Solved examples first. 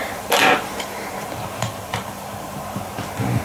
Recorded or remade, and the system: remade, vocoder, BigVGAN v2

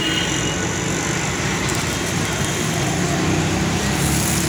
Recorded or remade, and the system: recorded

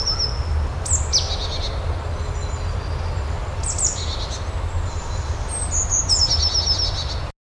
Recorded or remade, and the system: recorded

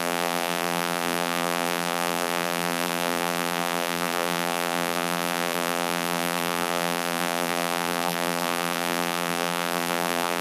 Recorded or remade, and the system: remade, vocoder, BigVGAN v2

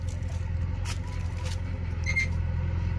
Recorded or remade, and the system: recorded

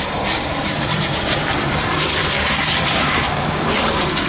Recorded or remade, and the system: recorded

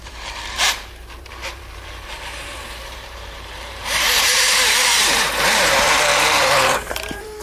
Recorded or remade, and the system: remade, vocoder, BigVGAN v2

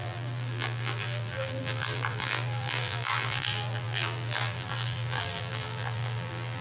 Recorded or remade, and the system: remade, vocoder, BigVGAN v2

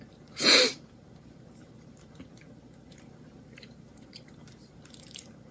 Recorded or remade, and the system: remade, vocoder, BigVGAN v2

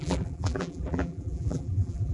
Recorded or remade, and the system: remade, vocoder, BigVGAN v2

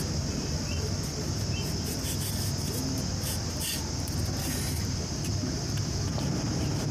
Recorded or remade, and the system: remade, vocoder, BigVGAN v2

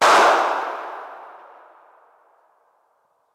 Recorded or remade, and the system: recorded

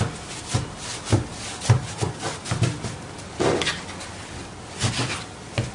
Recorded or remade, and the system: recorded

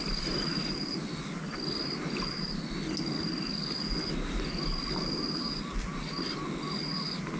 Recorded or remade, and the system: recorded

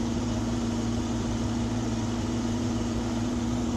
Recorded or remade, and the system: remade, vocoder, BigVGAN v2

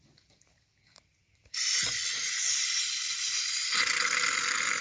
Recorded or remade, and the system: remade, vocoder, BigVGAN v2